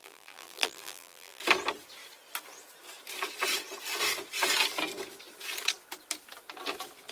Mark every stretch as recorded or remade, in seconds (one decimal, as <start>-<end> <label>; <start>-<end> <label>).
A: 0.0-1.4 remade; 1.4-7.1 recorded